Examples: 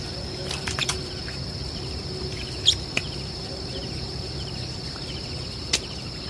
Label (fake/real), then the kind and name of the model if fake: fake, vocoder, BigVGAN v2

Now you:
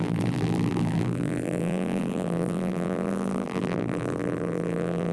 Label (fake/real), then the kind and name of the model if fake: fake, vocoder, BigVGAN v2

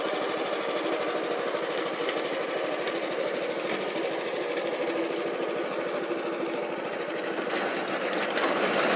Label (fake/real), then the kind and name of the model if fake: real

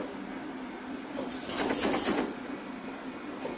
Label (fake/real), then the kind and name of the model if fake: real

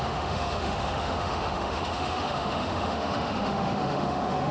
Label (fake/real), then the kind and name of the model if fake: fake, autoencoder, DAC-VAE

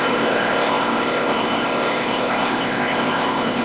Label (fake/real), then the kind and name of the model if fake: fake, codec, ZipCodec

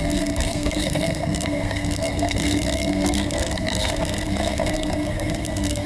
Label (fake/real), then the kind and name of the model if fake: fake, codec, SNAC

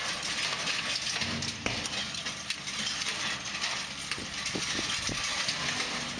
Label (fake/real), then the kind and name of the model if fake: real